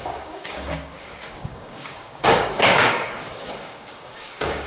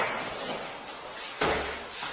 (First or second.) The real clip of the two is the second